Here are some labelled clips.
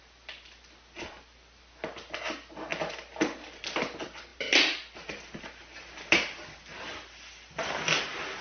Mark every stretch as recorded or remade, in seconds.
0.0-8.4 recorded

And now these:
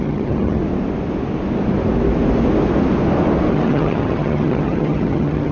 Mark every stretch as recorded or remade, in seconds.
0.0-0.6 remade; 0.6-3.5 recorded; 3.5-5.5 remade

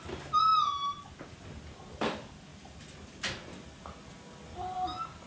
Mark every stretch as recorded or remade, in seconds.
0.0-5.3 recorded